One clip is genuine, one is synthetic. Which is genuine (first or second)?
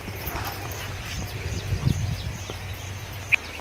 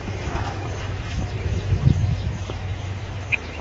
first